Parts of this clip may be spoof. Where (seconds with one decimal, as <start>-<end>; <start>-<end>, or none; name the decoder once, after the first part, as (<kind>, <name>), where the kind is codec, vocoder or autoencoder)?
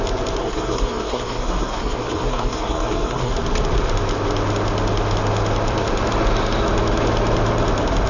0.4-3.3 (codec, SNAC)